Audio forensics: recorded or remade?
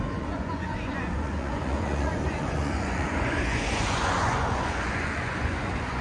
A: remade